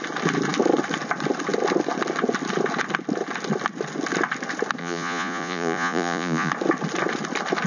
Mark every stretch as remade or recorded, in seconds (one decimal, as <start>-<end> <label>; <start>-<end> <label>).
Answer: 0.0-4.8 recorded; 4.8-6.5 remade; 6.5-7.7 recorded